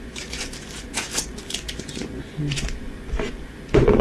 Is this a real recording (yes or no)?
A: no